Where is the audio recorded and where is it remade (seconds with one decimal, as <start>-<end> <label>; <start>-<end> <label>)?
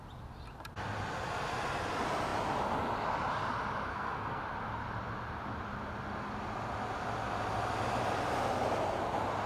0.0-3.9 recorded; 3.9-4.4 remade; 4.4-9.5 recorded